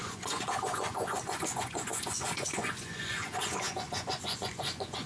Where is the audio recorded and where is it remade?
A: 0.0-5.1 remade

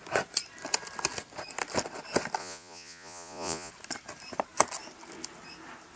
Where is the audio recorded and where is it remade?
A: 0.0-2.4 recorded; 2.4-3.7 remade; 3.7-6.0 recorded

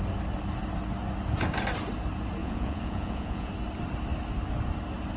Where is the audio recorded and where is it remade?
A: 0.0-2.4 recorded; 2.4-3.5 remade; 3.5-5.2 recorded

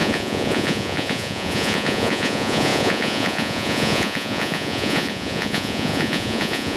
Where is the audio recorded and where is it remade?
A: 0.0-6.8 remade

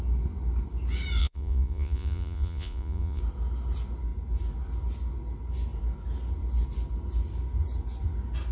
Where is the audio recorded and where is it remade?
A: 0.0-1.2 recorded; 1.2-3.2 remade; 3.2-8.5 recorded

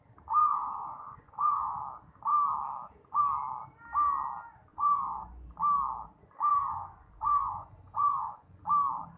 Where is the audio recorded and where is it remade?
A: 0.0-0.4 recorded; 0.4-1.8 remade; 1.8-4.7 recorded; 4.7-5.5 remade; 5.5-6.5 recorded; 6.5-8.6 remade; 8.6-9.2 recorded

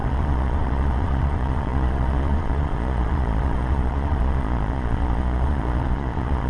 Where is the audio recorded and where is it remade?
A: 0.0-6.5 remade

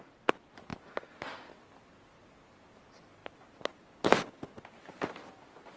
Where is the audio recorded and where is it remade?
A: 0.0-5.8 recorded